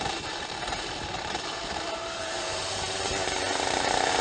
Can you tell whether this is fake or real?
fake